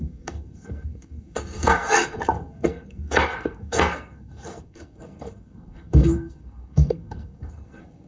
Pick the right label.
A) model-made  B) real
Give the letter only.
A